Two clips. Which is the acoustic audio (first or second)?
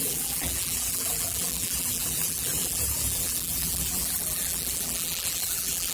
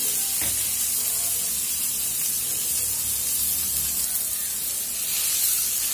second